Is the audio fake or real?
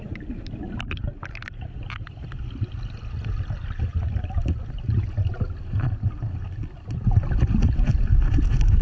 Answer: real